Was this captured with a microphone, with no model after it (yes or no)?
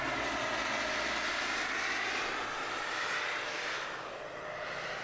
yes